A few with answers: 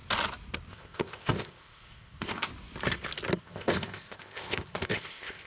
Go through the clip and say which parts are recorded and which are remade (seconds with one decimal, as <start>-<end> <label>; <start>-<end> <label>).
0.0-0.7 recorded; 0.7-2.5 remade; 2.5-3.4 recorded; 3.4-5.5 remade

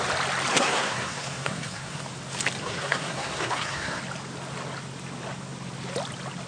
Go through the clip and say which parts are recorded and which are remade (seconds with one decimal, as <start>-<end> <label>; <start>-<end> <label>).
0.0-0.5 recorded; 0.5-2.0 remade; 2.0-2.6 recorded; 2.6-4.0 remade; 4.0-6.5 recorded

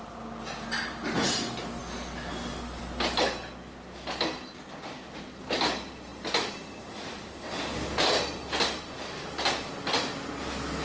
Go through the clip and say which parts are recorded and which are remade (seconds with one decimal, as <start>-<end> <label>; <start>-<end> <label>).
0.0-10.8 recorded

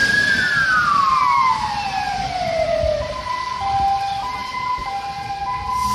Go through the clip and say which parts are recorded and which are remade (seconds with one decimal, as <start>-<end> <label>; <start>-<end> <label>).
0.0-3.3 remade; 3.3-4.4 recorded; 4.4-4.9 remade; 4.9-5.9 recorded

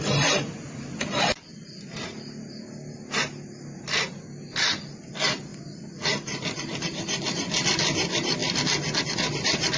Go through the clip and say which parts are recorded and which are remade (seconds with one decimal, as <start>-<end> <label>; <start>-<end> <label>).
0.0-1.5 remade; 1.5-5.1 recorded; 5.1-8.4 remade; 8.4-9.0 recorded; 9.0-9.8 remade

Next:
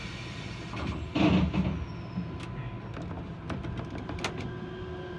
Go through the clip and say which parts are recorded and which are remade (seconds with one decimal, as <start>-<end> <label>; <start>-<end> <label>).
0.0-5.2 recorded

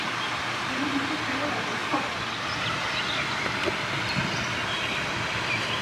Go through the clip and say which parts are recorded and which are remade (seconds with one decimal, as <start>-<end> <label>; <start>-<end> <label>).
0.0-5.8 recorded

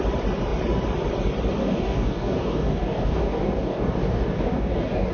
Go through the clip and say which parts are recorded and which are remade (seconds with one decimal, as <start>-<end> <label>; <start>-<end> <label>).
0.0-1.6 recorded; 1.6-5.1 remade